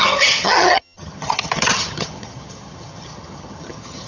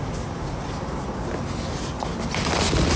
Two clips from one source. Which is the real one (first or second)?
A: second